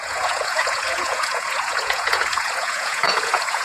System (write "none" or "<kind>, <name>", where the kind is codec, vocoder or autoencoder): vocoder, Vocos